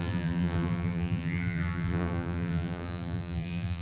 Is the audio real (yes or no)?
no